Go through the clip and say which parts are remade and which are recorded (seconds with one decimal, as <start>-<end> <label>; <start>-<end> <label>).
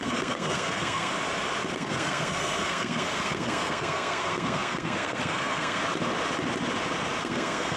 0.0-1.1 remade; 1.1-1.7 recorded; 1.7-5.8 remade; 5.8-7.2 recorded; 7.2-7.8 remade